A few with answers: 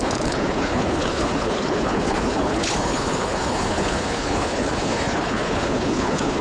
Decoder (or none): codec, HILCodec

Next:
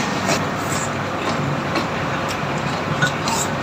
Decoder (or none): vocoder, BigVGAN v2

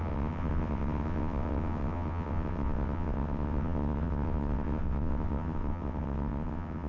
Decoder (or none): vocoder, WaveNeXt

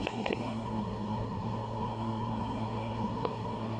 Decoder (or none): codec, SNAC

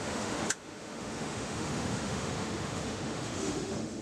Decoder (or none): autoencoder, DAC-VAE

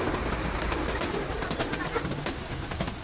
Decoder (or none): vocoder, BigVGAN v2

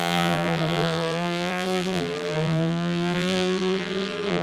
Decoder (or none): vocoder, BigVGAN v2